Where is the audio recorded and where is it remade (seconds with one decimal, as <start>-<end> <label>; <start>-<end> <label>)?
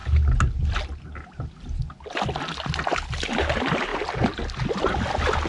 0.0-5.5 recorded